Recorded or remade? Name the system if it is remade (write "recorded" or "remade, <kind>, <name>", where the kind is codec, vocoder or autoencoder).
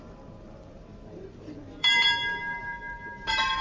remade, vocoder, BigVGAN v2